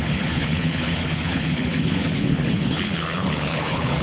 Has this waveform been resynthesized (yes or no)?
yes